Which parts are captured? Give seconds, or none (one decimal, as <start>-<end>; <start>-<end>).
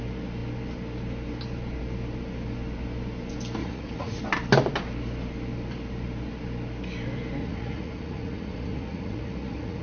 0.0-3.6; 4.2-7.4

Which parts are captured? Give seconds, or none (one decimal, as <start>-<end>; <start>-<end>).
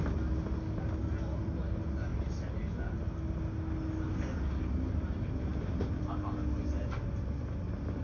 0.0-8.0